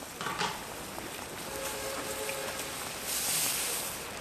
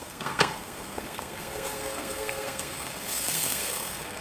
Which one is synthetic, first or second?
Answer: second